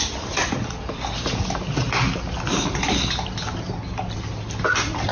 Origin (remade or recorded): recorded